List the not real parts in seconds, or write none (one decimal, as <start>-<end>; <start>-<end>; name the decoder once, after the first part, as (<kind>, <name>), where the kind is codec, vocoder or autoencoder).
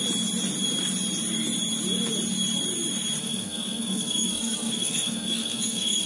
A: 3.2-6.1 (autoencoder, DAC-VAE)